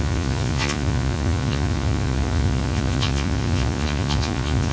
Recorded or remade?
remade